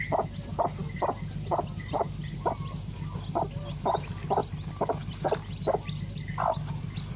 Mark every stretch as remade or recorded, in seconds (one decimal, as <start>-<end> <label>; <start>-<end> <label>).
0.0-0.8 recorded; 0.8-4.0 remade; 4.0-7.2 recorded